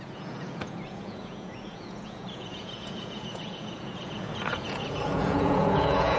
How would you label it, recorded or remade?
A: remade